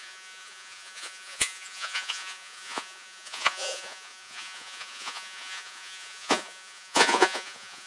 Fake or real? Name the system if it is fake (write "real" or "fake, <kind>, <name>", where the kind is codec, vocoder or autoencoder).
fake, vocoder, Vocos